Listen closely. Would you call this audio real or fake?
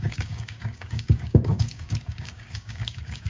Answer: fake